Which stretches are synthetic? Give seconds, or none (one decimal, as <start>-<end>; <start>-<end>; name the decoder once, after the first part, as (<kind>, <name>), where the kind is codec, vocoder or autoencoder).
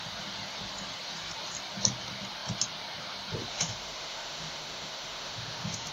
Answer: 3.5-5.9 (autoencoder, DAC-VAE)